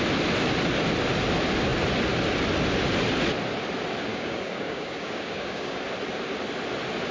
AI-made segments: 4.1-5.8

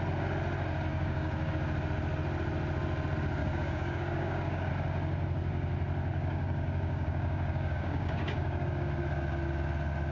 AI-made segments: 0.9-1.5; 3.4-4.7; 6.1-8.9

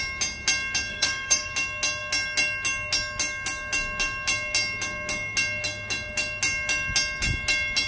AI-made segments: 0.9-1.5